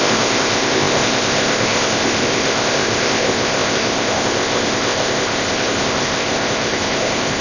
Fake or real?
fake